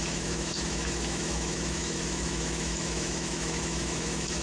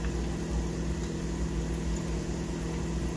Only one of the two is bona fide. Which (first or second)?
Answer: second